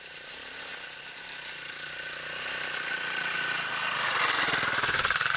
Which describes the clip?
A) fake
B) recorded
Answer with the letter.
A